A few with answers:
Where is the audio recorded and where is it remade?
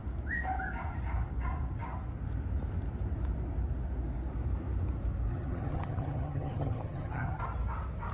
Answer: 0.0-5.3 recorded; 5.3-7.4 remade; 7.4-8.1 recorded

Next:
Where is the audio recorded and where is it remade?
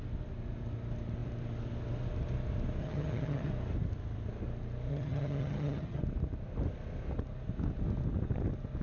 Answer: 0.0-2.8 recorded; 2.8-3.5 remade; 3.5-4.9 recorded; 4.9-6.0 remade; 6.0-8.8 recorded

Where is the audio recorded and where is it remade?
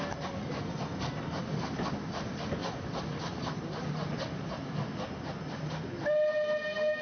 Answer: 0.0-7.0 recorded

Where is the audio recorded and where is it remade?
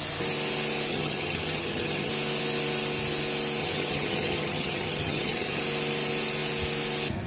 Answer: 0.0-0.9 recorded; 0.9-2.1 remade; 2.1-3.6 recorded; 3.6-5.6 remade; 5.6-7.3 recorded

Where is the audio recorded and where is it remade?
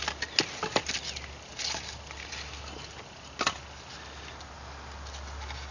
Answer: 0.0-5.7 recorded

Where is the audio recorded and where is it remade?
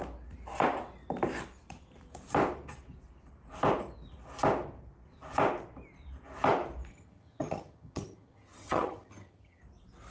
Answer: 0.0-6.9 recorded; 6.9-9.6 remade; 9.6-10.1 recorded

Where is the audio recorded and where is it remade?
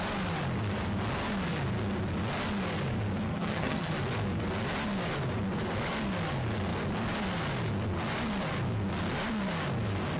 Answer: 0.0-3.3 recorded; 3.3-3.9 remade; 3.9-10.2 recorded